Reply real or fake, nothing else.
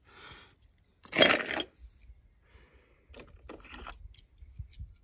real